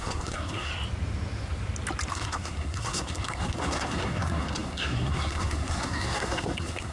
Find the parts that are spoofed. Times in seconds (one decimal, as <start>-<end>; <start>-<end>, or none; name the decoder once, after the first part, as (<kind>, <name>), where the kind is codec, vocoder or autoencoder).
0.0-0.7 (codec, SNAC); 2.1-6.9